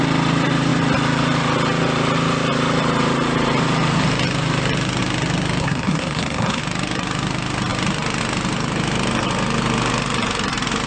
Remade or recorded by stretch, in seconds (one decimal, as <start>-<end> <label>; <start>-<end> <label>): 0.0-5.6 recorded; 5.6-6.6 remade; 6.6-10.9 recorded